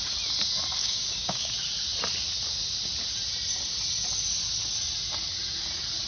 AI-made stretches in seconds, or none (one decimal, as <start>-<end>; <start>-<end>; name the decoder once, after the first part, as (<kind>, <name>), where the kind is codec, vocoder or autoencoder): 0.8-1.5 (codec, DAC)